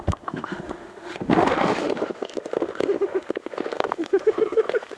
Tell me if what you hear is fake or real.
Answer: fake